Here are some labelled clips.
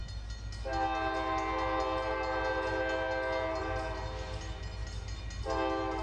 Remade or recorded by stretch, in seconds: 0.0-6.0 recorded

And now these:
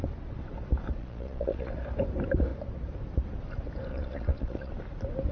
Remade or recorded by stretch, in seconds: 0.0-1.0 recorded; 1.0-1.7 remade; 1.7-3.9 recorded; 3.9-4.7 remade; 4.7-5.3 recorded

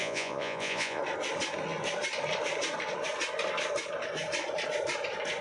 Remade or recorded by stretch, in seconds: 0.0-1.0 remade; 1.0-5.4 recorded

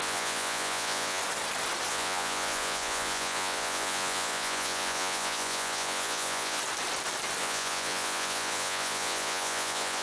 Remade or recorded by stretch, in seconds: 0.0-1.2 remade; 1.2-1.9 recorded; 1.9-6.6 remade; 6.6-7.4 recorded; 7.4-10.0 remade

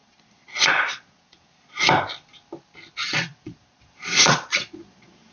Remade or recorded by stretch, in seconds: 0.0-1.8 remade; 1.8-3.0 recorded; 3.0-5.3 remade

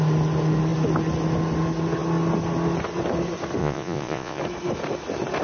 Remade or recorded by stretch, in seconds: 0.0-3.6 recorded; 3.6-4.4 remade; 4.4-5.4 recorded